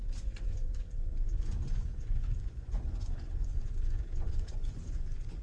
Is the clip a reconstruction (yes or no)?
yes